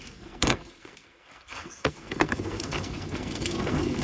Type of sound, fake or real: fake